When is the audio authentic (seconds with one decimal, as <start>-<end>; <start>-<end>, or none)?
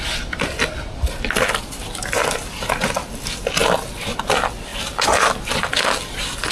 0.0-6.5